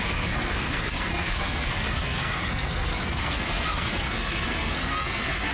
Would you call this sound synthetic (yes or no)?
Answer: yes